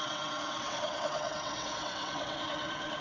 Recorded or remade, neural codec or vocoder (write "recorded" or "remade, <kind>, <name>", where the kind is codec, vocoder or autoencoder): remade, vocoder, WaveNeXt